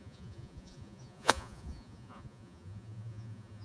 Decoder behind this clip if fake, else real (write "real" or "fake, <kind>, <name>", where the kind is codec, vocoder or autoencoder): fake, vocoder, Vocos